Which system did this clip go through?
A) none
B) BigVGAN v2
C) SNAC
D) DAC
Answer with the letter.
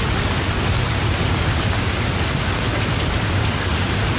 A